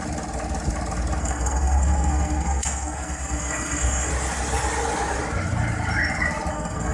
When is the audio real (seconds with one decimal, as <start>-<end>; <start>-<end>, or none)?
0.0-1.2; 4.1-6.5